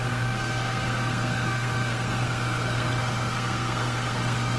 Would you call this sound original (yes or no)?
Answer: no